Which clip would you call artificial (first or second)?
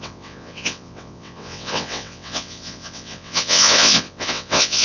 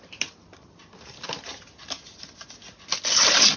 first